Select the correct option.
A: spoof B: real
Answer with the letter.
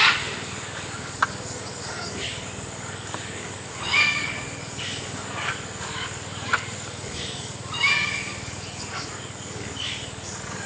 A